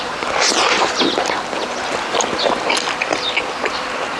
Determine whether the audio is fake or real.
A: real